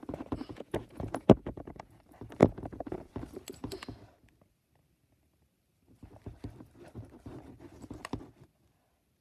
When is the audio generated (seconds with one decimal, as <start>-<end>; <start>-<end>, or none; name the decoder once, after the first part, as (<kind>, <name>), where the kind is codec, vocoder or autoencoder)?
0.5-2.0 (vocoder, Vocos); 2.4-3.1